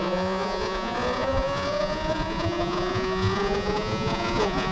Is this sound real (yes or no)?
no